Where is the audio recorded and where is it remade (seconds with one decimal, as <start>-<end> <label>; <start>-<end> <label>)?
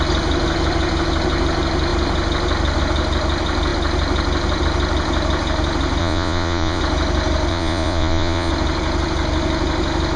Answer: 0.0-6.0 recorded; 6.0-6.8 remade; 6.8-7.5 recorded; 7.5-8.5 remade; 8.5-10.2 recorded